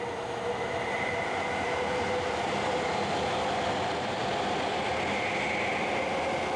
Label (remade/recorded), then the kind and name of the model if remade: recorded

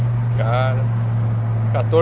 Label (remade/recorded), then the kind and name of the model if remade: recorded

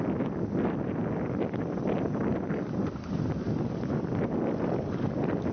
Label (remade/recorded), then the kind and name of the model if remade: recorded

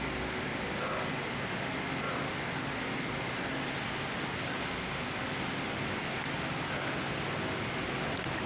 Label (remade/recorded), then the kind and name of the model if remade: recorded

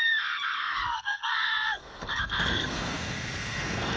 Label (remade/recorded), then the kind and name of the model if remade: remade, codec, SNAC